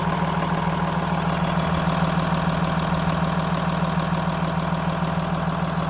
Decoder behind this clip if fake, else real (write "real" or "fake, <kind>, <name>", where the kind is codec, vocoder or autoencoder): real